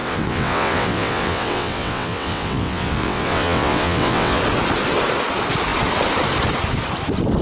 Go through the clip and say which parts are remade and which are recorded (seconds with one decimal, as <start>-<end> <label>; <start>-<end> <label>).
0.0-4.4 remade; 4.4-7.4 recorded